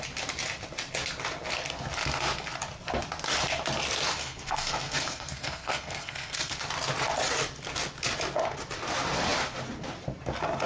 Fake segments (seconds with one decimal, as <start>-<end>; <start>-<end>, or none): 4.2-6.6